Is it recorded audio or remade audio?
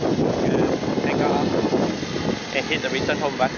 recorded